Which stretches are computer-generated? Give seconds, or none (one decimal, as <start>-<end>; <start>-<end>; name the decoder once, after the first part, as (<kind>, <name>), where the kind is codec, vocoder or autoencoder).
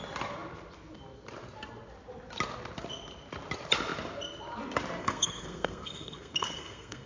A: 5.0-7.1 (codec, SNAC)